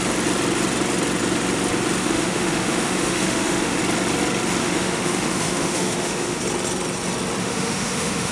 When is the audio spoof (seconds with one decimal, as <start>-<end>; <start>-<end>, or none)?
2.0-3.8; 4.6-6.4; 7.4-8.3